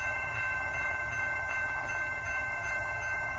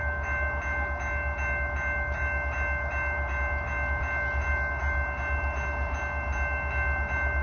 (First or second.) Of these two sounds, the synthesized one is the first